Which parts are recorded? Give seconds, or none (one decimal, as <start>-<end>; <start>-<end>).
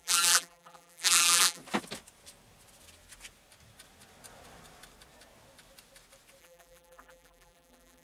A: 1.6-6.4